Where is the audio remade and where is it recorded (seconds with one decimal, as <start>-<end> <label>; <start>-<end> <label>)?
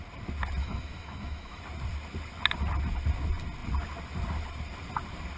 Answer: 0.0-0.6 recorded; 0.6-1.6 remade; 1.6-5.4 recorded